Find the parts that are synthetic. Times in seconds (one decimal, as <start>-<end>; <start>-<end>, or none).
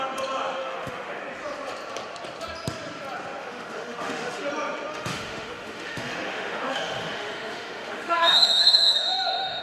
0.6-1.2; 3.4-4.5; 4.9-9.6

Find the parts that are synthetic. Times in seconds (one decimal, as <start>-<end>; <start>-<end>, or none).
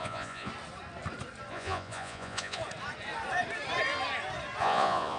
0.0-0.5; 1.5-2.6; 4.6-5.2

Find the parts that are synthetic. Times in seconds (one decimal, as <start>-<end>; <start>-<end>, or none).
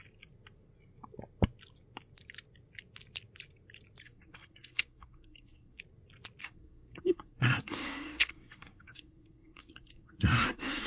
4.0-5.8; 6.4-10.9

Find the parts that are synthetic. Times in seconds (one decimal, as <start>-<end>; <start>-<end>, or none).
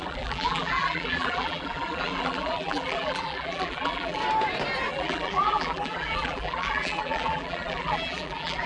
0.0-4.2; 4.9-8.7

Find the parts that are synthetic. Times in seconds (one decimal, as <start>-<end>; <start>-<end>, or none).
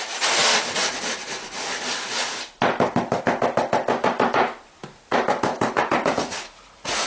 5.5-7.1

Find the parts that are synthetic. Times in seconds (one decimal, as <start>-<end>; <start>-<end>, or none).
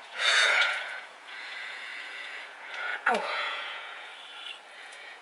0.0-4.1; 4.8-5.2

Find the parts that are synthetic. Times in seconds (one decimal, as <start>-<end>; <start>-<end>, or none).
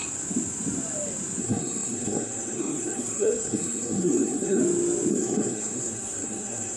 1.4-4.6; 5.1-6.8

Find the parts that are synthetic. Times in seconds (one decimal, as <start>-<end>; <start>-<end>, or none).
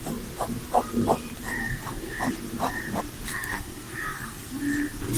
1.6-2.2; 3.3-4.6